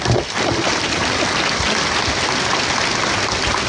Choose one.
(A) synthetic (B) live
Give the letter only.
B